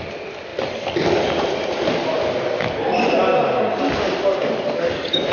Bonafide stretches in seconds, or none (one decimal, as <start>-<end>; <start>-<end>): 0.0-4.4